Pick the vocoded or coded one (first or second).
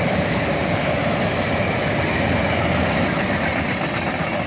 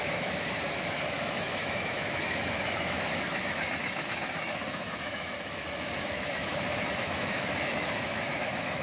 second